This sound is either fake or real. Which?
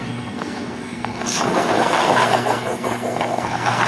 fake